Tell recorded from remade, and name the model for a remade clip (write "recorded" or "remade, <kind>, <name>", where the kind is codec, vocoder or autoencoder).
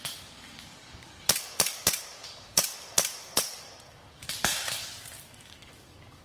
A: remade, codec, DAC